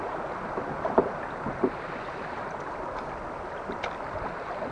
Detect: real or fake real